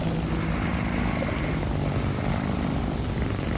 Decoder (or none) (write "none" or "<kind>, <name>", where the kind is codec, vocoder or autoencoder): none